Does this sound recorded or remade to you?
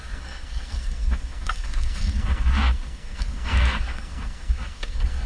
remade